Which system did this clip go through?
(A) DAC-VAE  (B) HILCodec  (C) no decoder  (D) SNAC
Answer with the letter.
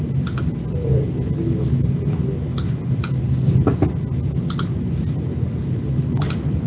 C